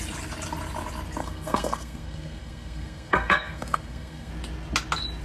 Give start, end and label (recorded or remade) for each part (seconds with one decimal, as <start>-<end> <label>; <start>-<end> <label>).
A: 0.0-1.2 recorded; 1.2-4.3 remade; 4.3-5.2 recorded